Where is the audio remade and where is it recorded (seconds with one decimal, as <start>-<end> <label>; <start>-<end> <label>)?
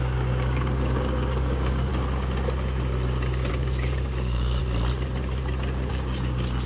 0.0-1.9 remade; 1.9-3.5 recorded; 3.5-4.6 remade; 4.6-5.9 recorded; 5.9-6.7 remade